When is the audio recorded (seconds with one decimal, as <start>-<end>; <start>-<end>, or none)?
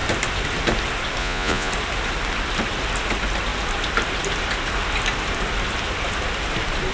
0.0-1.2; 1.7-6.9